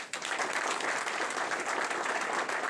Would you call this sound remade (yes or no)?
no